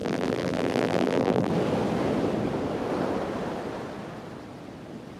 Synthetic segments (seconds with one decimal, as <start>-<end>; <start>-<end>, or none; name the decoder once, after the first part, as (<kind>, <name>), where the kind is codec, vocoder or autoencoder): 0.0-1.5 (vocoder, BigVGAN v2)